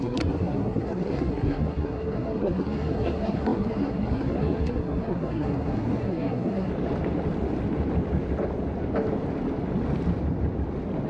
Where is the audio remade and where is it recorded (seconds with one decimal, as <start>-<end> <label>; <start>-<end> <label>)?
0.0-6.7 remade; 6.7-11.1 recorded